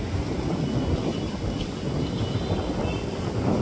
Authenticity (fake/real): real